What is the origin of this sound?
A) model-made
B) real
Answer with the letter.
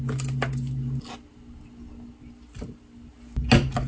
B